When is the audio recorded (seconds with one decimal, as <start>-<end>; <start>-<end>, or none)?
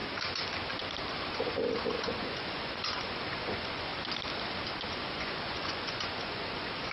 0.0-1.1; 3.9-4.9